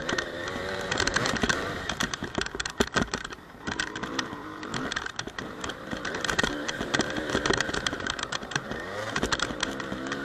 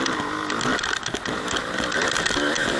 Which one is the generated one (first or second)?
first